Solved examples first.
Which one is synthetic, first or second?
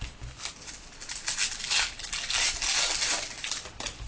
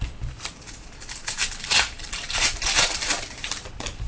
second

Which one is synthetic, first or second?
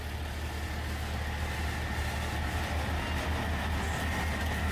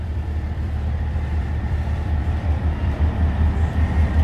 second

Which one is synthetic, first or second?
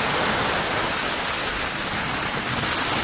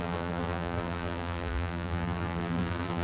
second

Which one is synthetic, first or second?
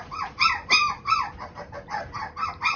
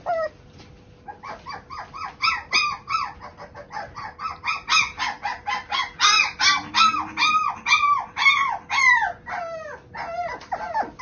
first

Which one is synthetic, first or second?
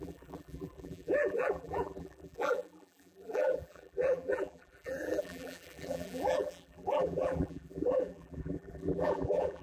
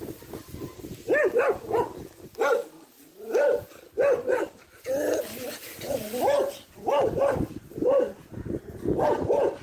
first